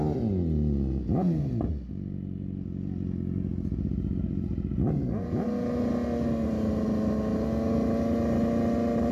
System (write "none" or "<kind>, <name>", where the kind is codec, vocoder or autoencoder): none